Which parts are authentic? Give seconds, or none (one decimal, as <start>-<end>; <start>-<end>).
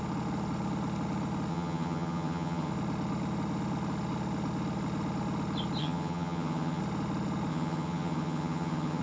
0.0-1.5; 2.7-5.8; 6.8-7.5